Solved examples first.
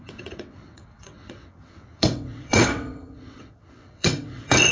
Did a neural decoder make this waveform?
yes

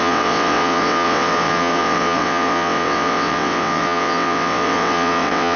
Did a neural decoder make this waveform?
yes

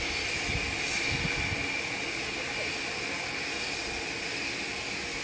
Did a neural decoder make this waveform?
no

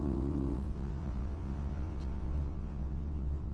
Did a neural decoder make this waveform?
yes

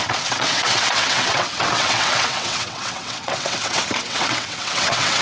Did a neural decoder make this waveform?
yes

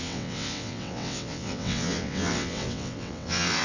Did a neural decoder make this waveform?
yes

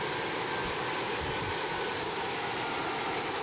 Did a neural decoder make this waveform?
no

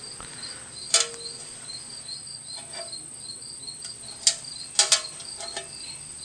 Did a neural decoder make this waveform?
no